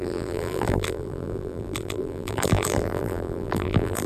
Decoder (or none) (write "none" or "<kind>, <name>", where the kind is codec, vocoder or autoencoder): vocoder, BigVGAN v2